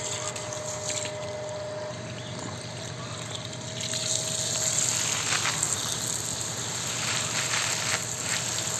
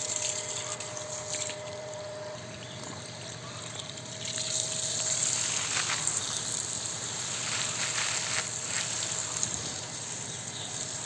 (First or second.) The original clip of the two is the first